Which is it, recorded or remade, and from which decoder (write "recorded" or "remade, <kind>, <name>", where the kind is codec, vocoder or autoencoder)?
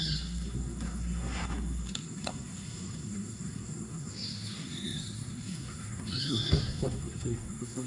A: remade, codec, SNAC